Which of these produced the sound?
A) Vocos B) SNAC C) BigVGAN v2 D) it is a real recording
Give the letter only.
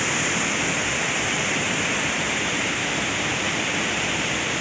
C